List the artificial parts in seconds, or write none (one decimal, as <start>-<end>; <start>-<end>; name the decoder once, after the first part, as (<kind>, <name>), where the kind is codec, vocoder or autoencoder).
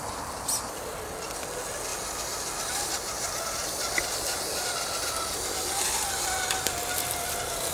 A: none